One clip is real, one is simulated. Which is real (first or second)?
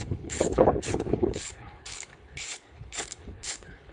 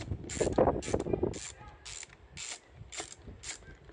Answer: second